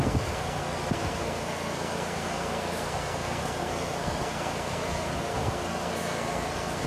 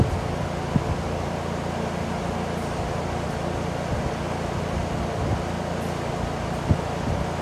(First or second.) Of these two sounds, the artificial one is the first